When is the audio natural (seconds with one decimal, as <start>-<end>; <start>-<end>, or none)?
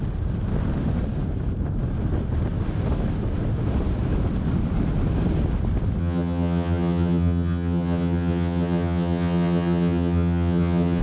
0.0-6.0